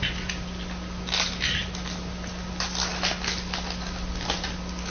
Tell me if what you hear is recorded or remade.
recorded